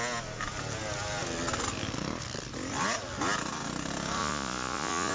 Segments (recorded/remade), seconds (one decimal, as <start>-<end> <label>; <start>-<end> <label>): 0.0-4.2 recorded; 4.2-5.1 remade

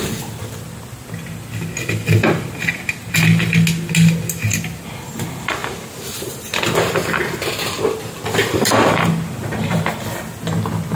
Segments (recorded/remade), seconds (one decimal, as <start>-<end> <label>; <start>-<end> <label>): 0.0-11.0 recorded

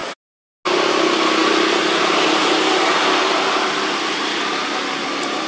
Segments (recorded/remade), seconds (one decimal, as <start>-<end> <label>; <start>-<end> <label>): 0.0-5.5 recorded

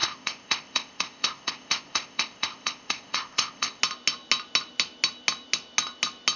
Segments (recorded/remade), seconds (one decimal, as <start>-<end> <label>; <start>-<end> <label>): 0.0-3.8 remade; 3.8-6.4 recorded

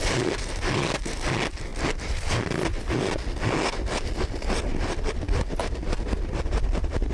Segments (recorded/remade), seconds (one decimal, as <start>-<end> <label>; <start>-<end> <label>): 0.0-1.7 recorded; 1.7-2.3 remade; 2.3-4.7 recorded; 4.7-5.6 remade; 5.6-7.1 recorded